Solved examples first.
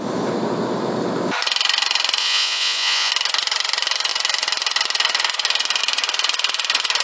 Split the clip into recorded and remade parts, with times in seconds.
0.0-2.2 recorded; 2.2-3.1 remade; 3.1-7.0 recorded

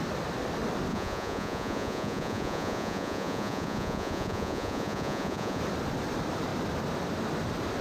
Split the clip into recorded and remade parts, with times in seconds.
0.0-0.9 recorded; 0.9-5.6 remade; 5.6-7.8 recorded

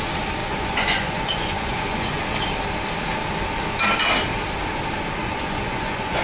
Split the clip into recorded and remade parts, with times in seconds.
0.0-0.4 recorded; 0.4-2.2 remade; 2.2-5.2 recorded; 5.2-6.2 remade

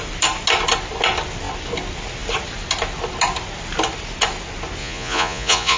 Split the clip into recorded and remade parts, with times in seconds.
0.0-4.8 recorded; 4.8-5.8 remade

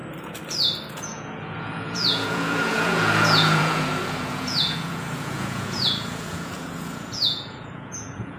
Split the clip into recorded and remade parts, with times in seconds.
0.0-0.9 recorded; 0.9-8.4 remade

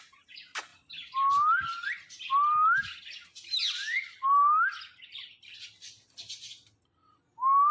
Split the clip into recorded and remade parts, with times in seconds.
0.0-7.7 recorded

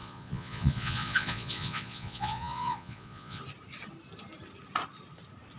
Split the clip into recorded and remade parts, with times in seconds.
0.0-3.4 remade; 3.4-5.6 recorded

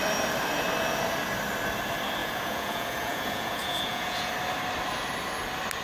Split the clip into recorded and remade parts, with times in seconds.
0.0-2.2 recorded; 2.2-4.3 remade; 4.3-5.8 recorded